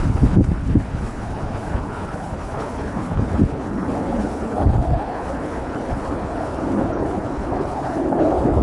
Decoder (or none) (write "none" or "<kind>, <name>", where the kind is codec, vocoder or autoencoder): codec, HILCodec